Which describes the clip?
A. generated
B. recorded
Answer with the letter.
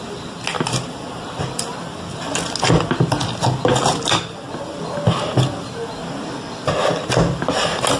B